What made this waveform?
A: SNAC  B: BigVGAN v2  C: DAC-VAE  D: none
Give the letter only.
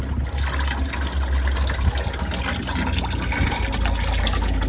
D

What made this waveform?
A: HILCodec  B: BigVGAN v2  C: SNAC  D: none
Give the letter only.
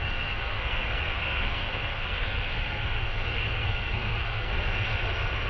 C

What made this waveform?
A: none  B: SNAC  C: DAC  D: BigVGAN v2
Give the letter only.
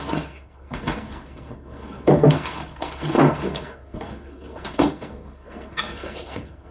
B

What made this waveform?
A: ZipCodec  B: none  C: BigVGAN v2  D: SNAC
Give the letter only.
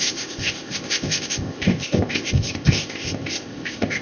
A